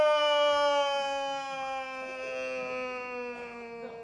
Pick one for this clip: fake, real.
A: real